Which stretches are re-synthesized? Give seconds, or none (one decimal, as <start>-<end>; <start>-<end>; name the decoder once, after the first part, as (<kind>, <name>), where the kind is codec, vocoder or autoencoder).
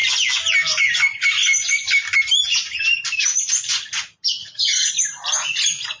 4.4-4.9 (vocoder, HiFi-GAN)